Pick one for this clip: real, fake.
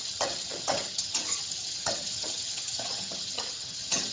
fake